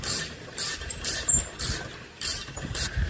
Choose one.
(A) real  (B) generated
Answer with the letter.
B